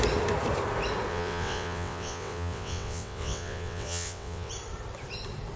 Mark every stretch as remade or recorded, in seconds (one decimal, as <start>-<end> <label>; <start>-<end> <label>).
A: 0.0-1.1 recorded; 1.1-4.5 remade; 4.5-5.6 recorded